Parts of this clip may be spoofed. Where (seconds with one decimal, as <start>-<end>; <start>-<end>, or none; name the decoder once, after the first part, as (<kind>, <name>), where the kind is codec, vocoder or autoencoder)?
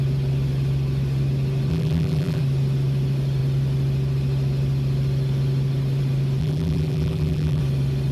1.7-2.4 (vocoder, BigVGAN v2); 6.4-7.6